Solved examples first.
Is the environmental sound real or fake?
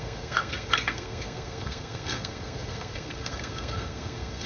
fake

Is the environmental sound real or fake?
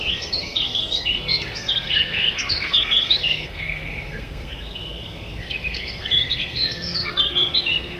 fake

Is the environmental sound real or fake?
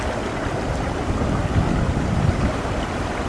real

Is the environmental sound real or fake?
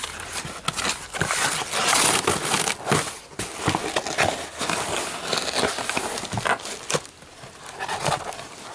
real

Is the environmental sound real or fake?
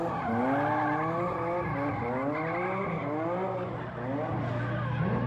real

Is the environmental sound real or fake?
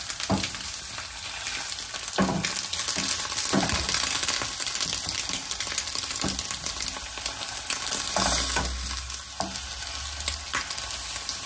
real